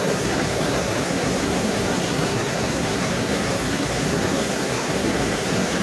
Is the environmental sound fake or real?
fake